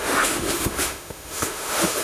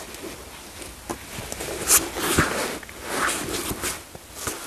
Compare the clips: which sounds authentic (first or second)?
second